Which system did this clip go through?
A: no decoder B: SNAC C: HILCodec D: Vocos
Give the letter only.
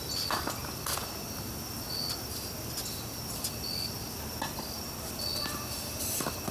A